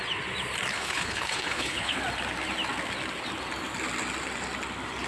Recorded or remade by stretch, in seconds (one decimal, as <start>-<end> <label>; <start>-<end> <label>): 0.0-0.7 recorded; 0.7-2.0 remade; 2.0-5.1 recorded